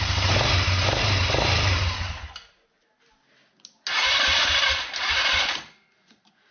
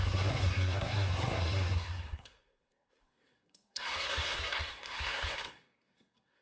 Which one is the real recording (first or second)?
first